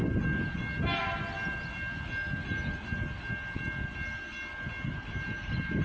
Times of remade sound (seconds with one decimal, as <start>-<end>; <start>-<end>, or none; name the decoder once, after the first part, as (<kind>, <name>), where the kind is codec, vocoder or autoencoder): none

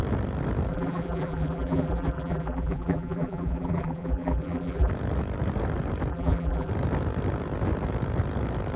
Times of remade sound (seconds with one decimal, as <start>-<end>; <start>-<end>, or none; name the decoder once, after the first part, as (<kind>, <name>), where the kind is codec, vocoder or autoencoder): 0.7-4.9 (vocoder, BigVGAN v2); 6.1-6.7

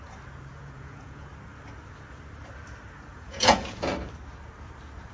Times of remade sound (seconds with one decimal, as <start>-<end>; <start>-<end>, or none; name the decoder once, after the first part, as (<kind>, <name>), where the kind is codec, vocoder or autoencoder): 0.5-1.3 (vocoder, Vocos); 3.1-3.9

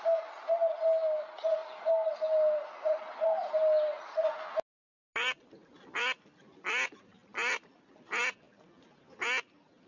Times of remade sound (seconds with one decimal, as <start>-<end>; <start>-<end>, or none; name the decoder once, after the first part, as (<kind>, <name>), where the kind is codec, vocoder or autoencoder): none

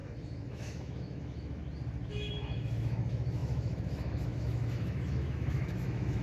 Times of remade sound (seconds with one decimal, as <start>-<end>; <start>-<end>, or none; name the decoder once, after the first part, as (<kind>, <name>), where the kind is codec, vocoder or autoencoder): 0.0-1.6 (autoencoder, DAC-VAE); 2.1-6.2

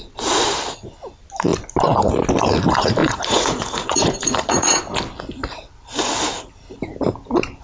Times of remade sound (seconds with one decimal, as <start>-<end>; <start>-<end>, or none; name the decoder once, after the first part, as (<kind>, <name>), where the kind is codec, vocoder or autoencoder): 3.0-4.8 (vocoder, Vocos)